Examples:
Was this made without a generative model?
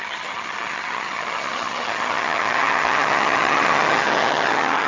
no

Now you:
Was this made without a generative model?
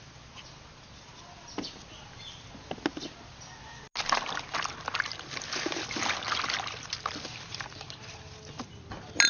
yes